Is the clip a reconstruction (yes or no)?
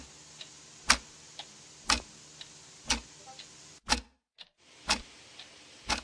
no